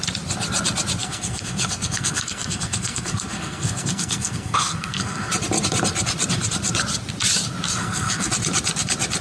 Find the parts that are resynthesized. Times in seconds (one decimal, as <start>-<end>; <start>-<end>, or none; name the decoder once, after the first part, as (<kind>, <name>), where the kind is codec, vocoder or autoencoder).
1.0-5.3 (codec, SNAC); 7.8-8.3